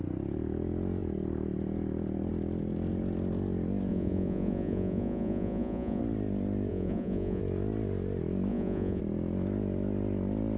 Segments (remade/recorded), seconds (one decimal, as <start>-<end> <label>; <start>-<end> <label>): 0.0-3.9 recorded; 3.9-6.0 remade; 6.0-6.7 recorded; 6.7-7.4 remade; 7.4-8.5 recorded; 8.5-9.0 remade; 9.0-10.6 recorded